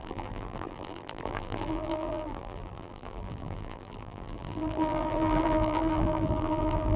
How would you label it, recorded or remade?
remade